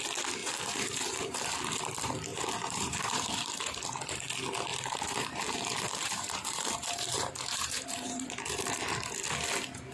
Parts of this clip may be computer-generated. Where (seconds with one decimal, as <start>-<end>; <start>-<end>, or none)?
0.4-1.8; 2.3-3.8; 4.7-8.8